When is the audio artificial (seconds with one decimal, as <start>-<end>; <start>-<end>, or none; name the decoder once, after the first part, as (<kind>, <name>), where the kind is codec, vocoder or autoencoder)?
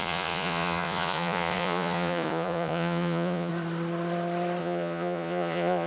0.0-3.5 (vocoder, Vocos); 4.6-5.9